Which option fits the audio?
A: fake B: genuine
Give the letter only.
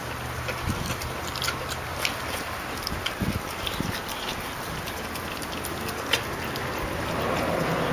B